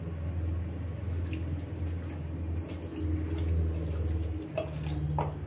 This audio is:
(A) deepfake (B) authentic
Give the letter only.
B